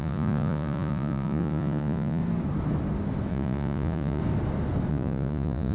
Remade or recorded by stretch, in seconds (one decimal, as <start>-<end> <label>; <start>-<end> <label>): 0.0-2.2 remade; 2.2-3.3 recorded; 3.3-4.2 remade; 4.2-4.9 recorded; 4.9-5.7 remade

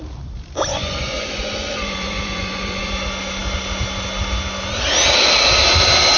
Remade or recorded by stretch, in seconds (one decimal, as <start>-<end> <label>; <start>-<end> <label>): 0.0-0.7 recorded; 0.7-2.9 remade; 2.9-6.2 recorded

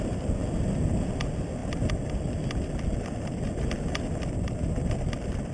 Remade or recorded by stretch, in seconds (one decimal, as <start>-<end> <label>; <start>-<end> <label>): 0.0-5.5 recorded

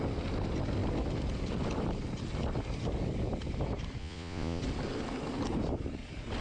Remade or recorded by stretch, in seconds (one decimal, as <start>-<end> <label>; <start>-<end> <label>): 0.0-4.0 recorded; 4.0-4.6 remade; 4.6-6.4 recorded

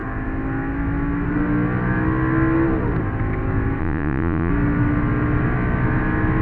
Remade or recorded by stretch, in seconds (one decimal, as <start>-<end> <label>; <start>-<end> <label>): 0.0-3.8 recorded; 3.8-4.5 remade; 4.5-6.4 recorded